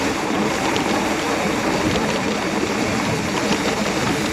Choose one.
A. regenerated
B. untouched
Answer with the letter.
B